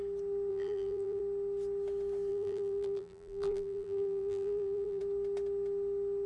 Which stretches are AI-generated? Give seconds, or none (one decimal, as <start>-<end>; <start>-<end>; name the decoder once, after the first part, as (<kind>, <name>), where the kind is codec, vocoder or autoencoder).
0.5-1.2 (vocoder, BigVGAN v2); 2.3-5.0